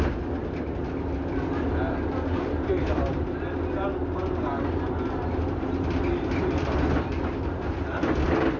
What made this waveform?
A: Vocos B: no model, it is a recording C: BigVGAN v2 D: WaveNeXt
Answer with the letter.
B